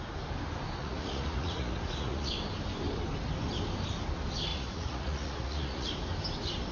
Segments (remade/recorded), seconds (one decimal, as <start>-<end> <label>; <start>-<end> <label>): 0.0-0.8 recorded; 0.8-2.3 remade; 2.3-4.5 recorded; 4.5-5.9 remade; 5.9-6.7 recorded